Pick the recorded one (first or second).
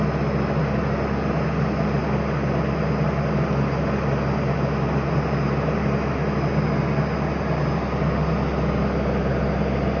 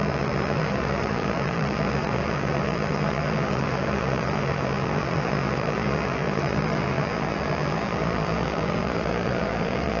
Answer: first